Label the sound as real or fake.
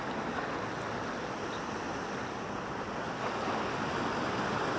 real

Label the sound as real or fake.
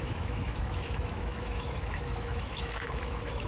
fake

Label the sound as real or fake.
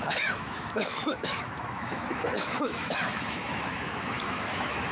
fake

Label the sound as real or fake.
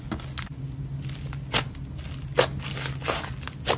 real